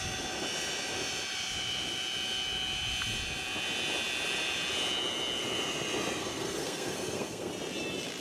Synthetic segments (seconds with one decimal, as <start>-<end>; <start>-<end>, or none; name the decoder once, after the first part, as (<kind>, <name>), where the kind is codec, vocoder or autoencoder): 6.2-7.5 (codec, SNAC)

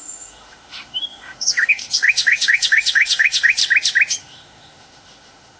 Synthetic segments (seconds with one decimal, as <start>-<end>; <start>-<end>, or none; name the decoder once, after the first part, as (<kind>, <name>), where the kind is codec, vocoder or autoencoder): 0.0-3.6 (autoencoder, DAC-VAE); 4.2-5.6